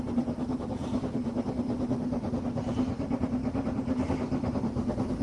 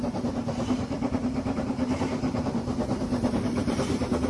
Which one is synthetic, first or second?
second